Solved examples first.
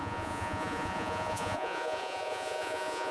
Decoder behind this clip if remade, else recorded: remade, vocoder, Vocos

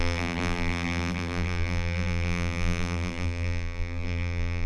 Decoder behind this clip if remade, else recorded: remade, vocoder, BigVGAN v2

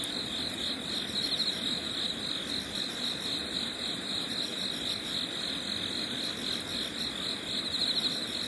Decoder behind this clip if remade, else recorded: recorded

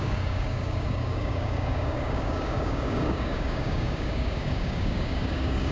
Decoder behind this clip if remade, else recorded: remade, codec, DAC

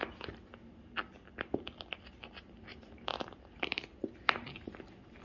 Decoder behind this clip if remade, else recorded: recorded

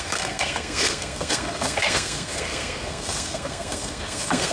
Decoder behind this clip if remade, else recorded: remade, codec, SNAC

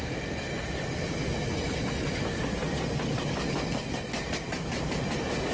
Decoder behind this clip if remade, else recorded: recorded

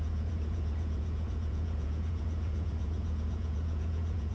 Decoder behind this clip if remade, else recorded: remade, vocoder, Vocos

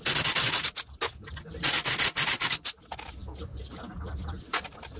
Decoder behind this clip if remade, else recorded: recorded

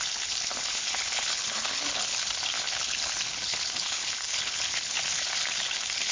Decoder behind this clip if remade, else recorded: remade, codec, HILCodec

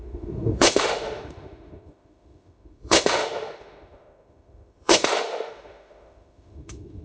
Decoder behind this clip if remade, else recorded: remade, autoencoder, DAC-VAE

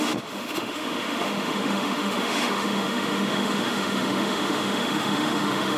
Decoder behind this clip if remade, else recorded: remade, autoencoder, DAC-VAE